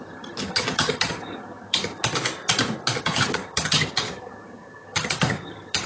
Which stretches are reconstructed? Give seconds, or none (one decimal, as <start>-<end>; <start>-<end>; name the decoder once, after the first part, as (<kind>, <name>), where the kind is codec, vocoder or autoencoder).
0.0-2.0 (vocoder, HiFi-GAN); 3.0-5.9